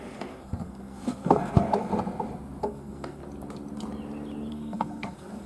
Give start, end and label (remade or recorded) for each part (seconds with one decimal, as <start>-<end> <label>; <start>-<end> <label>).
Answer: 0.0-1.9 remade; 1.9-2.6 recorded; 2.6-3.2 remade; 3.2-4.5 recorded; 4.5-5.5 remade